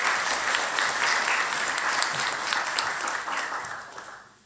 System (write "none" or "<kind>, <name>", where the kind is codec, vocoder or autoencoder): vocoder, BigVGAN v2